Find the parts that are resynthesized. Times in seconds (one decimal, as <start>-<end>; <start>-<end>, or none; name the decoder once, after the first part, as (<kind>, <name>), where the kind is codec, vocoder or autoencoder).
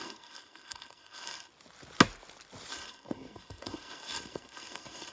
0.0-1.5 (codec, SNAC); 2.7-5.1